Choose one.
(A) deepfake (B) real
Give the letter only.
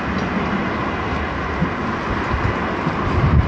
B